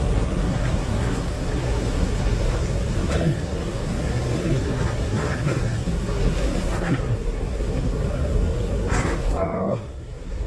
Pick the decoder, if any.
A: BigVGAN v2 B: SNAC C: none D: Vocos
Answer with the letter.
B